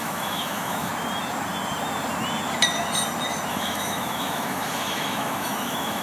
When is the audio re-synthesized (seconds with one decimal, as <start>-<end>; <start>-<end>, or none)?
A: 0.0-0.9; 3.5-6.0

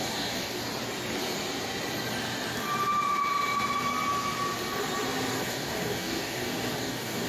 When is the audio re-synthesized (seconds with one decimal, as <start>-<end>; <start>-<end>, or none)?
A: 0.0-0.6; 5.4-7.3